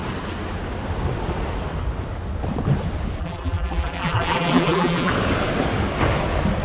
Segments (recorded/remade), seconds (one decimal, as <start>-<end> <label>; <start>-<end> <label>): 0.0-3.2 recorded; 3.2-5.1 remade; 5.1-6.6 recorded